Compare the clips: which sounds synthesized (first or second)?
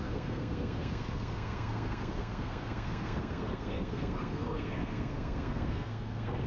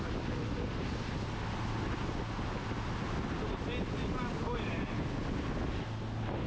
first